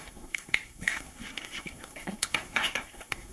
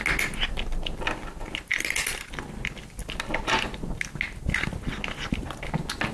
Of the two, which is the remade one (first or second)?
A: first